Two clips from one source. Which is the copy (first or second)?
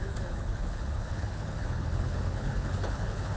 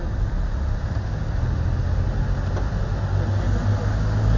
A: first